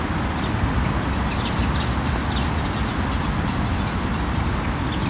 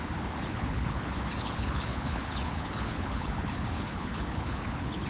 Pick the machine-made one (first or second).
second